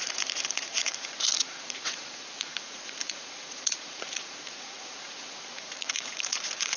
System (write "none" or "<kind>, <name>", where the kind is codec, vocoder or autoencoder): vocoder, Vocos